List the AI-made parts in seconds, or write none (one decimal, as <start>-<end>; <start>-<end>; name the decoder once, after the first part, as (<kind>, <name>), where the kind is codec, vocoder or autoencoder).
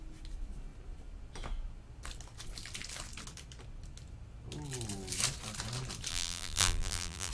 6.1-7.3 (vocoder, BigVGAN v2)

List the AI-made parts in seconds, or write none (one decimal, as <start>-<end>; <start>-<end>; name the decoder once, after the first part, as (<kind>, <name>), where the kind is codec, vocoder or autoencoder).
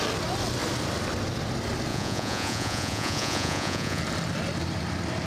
1.9-4.0 (vocoder, Vocos)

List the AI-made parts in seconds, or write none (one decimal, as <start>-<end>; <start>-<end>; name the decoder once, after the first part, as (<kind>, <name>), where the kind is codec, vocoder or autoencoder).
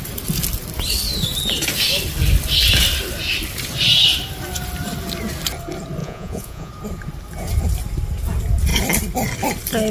6.0-6.7 (vocoder, Vocos)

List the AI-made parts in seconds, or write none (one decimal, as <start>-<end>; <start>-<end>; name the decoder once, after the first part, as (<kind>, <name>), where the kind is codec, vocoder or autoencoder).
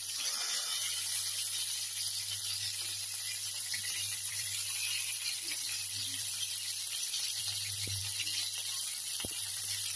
0.0-0.4 (vocoder, BigVGAN v2); 3.7-8.0; 9.5-10.0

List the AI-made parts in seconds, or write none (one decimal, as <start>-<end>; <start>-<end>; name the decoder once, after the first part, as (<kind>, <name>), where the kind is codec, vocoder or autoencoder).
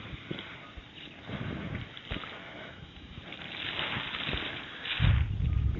2.4-3.2 (autoencoder, DAC-VAE)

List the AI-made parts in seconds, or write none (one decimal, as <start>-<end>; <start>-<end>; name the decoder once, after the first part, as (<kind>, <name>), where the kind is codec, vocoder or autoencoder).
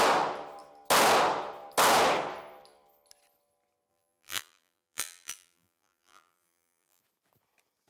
3.9-7.0 (vocoder, BigVGAN v2)